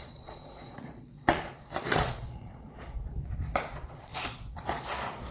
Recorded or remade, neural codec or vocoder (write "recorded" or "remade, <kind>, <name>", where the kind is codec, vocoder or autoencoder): remade, vocoder, Vocos